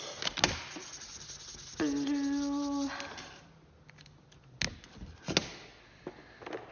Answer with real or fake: real